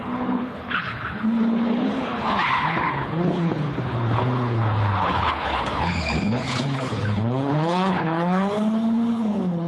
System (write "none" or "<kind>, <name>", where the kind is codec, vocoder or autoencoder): codec, HILCodec